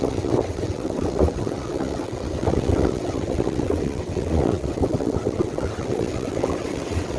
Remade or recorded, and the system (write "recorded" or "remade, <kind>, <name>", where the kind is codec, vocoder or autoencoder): remade, vocoder, WaveNeXt